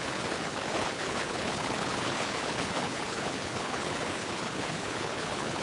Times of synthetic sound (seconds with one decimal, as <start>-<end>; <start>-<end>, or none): 0.0-5.6